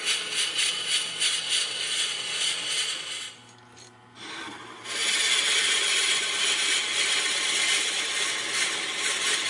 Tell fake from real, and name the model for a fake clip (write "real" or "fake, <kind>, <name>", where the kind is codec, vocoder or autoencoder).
real